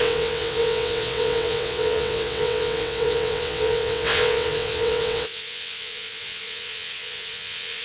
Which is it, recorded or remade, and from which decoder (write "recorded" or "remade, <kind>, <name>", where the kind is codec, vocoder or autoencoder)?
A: remade, vocoder, WaveNeXt